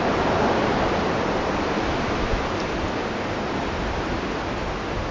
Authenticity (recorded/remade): recorded